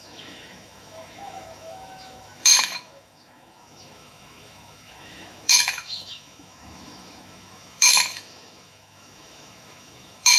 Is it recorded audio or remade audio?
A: remade